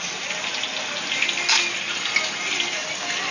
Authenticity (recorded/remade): recorded